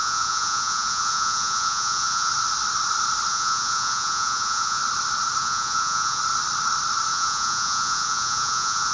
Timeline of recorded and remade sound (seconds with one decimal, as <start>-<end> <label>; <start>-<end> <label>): 0.0-2.3 remade; 2.3-3.3 recorded; 3.3-4.8 remade; 4.8-5.4 recorded; 5.4-6.2 remade; 6.2-7.1 recorded; 7.1-8.9 remade